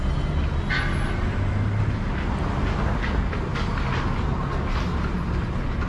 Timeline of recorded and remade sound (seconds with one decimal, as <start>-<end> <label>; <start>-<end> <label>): 0.0-5.9 recorded